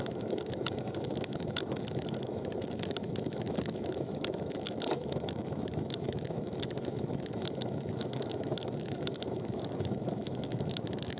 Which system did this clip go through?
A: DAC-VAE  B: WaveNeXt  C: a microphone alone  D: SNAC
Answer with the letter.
A